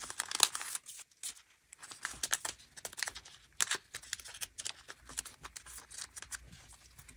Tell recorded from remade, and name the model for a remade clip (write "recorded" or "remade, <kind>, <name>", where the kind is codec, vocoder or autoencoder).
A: recorded